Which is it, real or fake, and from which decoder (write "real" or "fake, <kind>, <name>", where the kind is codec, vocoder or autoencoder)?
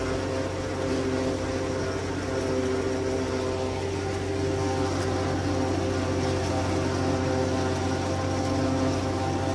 real